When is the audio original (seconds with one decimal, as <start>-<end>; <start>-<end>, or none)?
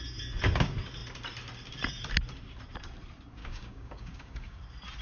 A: 0.0-3.4; 4.6-5.0